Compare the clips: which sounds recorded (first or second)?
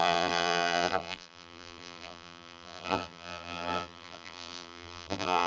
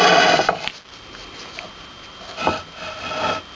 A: second